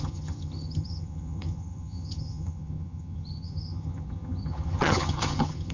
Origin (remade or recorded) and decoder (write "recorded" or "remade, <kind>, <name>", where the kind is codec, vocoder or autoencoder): remade, vocoder, HiFi-GAN